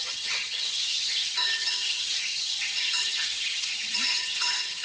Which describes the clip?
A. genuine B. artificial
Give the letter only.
B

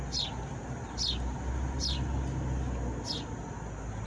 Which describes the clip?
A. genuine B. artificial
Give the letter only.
A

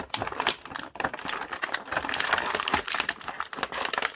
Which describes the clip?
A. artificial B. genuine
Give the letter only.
B